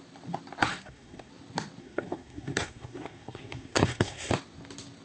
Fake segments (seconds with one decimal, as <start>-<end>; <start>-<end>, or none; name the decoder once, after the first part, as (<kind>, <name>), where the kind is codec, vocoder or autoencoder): 0.7-1.3 (codec, SNAC); 1.8-4.3